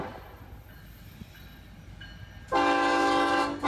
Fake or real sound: real